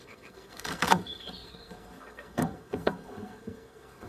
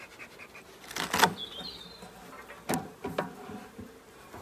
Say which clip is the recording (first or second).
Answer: second